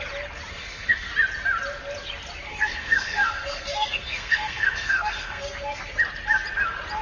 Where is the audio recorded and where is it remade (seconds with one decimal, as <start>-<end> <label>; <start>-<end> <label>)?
0.0-0.5 recorded; 0.5-1.1 remade; 1.1-2.5 recorded; 2.5-5.8 remade; 5.8-7.0 recorded